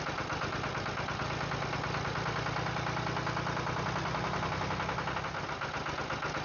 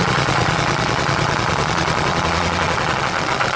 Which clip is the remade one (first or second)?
second